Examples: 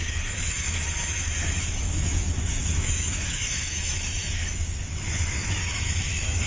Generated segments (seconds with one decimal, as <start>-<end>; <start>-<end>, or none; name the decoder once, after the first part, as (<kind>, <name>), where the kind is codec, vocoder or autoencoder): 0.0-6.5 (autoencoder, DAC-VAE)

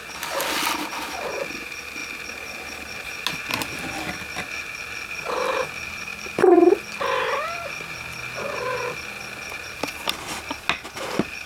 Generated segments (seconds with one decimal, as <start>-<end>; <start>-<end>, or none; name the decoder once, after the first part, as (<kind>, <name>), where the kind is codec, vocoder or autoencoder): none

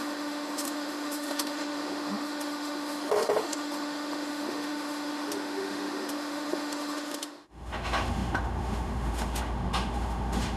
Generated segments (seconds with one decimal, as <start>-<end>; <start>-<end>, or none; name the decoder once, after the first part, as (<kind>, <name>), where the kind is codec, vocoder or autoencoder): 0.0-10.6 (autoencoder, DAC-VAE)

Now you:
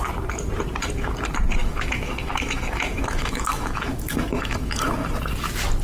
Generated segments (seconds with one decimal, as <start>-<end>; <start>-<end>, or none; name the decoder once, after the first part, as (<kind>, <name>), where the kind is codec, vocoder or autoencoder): 1.6-5.1 (autoencoder, DAC-VAE)

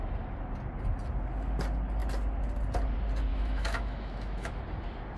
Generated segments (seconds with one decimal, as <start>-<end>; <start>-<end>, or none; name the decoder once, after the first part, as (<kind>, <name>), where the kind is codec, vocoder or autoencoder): 3.3-4.6 (autoencoder, DAC-VAE)